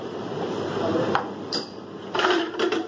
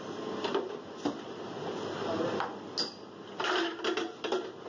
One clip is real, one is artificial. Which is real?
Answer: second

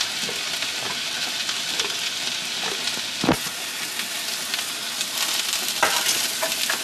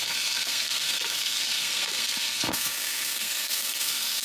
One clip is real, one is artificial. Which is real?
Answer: first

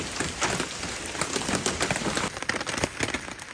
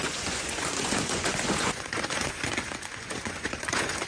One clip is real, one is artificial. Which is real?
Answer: first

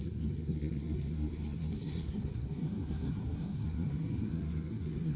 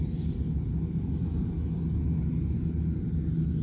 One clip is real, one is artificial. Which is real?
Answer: second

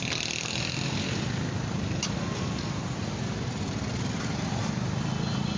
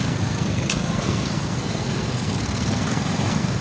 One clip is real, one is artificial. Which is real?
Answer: first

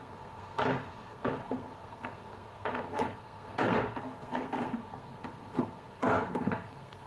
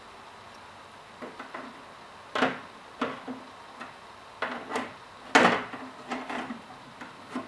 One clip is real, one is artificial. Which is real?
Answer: second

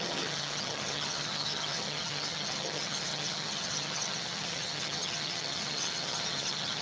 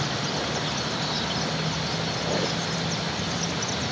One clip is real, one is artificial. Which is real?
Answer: second